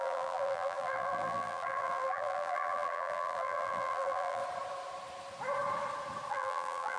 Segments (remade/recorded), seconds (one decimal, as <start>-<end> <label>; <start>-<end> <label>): 0.0-4.4 remade; 4.4-6.3 recorded; 6.3-7.0 remade

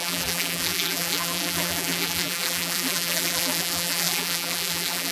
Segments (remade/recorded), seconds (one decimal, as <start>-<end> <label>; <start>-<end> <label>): 0.0-5.1 remade

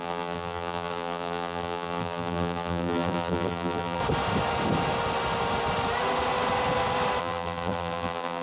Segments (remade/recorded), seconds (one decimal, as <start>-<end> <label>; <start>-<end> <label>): 0.0-4.0 remade; 4.0-7.2 recorded; 7.2-8.4 remade

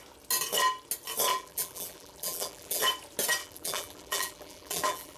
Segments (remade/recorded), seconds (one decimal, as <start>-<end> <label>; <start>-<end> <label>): 0.0-1.3 recorded; 1.3-2.8 remade; 2.8-3.4 recorded; 3.4-5.2 remade

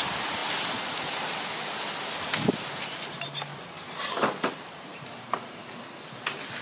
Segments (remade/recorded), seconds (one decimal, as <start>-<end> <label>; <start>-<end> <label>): 0.0-0.4 remade; 0.4-3.0 recorded; 3.0-5.6 remade; 5.6-6.6 recorded

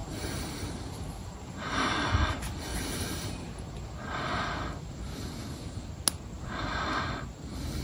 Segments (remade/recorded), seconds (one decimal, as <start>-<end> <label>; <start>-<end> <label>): 0.0-2.1 remade; 2.1-2.7 recorded; 2.7-3.7 remade; 3.7-7.8 recorded

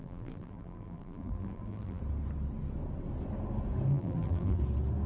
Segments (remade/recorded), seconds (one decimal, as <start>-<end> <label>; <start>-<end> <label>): 0.0-2.0 remade; 2.0-3.9 recorded; 3.9-4.6 remade; 4.6-5.1 recorded

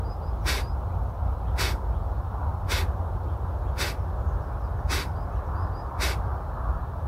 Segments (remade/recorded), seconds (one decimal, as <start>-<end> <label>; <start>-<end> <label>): 0.0-7.1 recorded